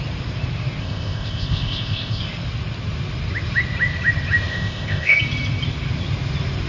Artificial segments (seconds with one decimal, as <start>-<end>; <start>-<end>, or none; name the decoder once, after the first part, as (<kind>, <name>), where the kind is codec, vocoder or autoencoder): 0.8-2.2 (codec, ZipCodec); 4.5-5.2